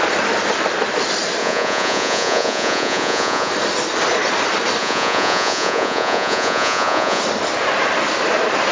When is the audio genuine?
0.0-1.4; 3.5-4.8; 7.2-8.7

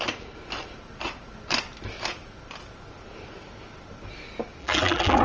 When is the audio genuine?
0.0-4.6

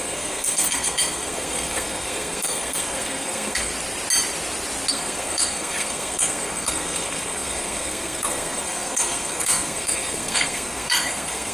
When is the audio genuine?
3.7-4.9

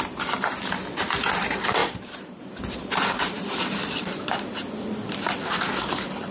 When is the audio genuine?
0.0-1.8; 2.4-2.8; 4.3-6.3